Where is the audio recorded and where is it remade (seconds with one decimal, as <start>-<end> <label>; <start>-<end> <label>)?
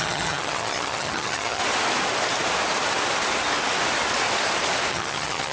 0.0-1.6 remade; 1.6-4.9 recorded; 4.9-5.5 remade